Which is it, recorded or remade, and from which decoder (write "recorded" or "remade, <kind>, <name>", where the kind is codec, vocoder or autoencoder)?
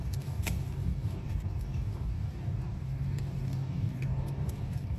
remade, codec, DAC